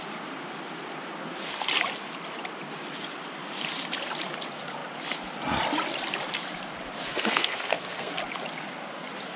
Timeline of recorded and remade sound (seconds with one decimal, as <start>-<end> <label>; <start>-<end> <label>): 0.0-7.1 recorded; 7.1-8.2 remade; 8.2-9.4 recorded